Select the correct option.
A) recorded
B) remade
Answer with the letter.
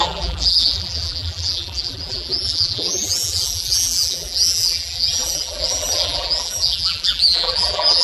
B